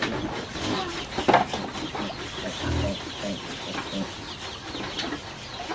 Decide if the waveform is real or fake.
real